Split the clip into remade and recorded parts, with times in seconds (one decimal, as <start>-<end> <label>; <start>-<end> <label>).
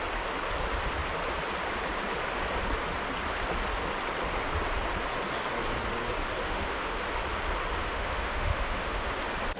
0.0-6.4 recorded; 6.4-7.0 remade; 7.0-7.8 recorded; 7.8-9.1 remade; 9.1-9.6 recorded